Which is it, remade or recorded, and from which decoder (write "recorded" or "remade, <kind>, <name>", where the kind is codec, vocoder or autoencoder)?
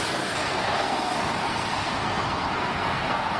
remade, codec, SNAC